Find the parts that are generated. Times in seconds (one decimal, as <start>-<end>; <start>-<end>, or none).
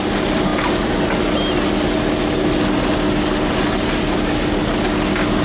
none